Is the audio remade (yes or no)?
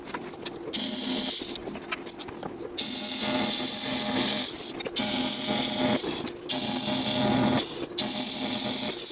no